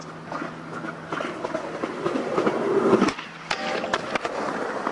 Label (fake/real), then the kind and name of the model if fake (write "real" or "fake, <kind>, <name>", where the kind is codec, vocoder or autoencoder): real